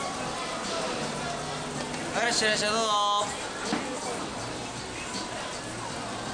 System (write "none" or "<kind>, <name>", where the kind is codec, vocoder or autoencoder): none